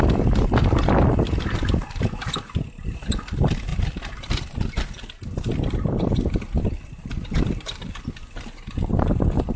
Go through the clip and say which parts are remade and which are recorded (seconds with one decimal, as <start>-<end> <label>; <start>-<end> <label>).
0.0-9.6 recorded